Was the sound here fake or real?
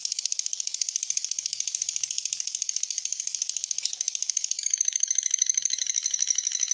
fake